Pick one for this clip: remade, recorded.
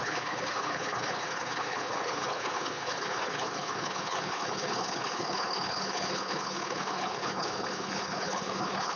remade